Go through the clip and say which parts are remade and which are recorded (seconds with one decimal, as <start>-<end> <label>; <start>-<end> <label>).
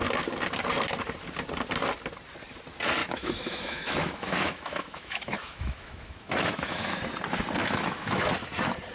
0.0-3.0 recorded; 3.0-7.0 remade; 7.0-7.6 recorded; 7.6-8.3 remade; 8.3-8.9 recorded